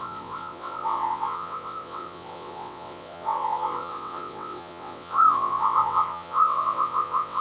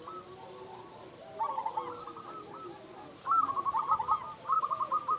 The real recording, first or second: second